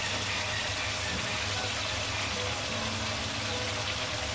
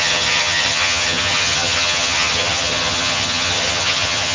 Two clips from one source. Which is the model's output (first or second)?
second